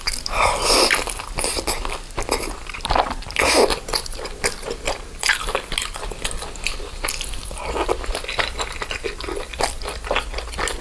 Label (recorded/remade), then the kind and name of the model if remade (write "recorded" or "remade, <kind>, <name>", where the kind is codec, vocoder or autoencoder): recorded